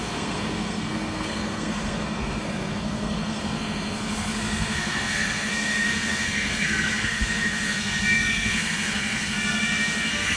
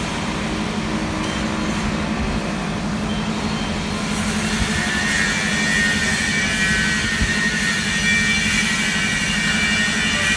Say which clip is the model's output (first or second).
first